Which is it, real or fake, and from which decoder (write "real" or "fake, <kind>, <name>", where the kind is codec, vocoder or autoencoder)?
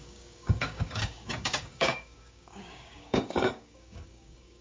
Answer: fake, codec, DAC